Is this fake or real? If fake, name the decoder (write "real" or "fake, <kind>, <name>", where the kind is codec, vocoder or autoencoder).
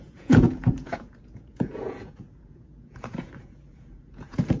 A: fake, vocoder, Vocos